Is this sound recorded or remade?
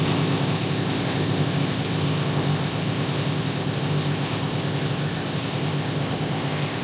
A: remade